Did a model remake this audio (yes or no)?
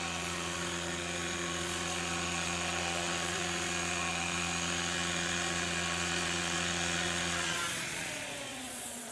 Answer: yes